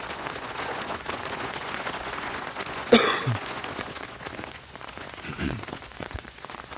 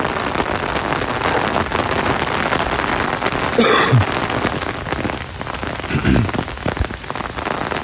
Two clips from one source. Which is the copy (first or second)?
first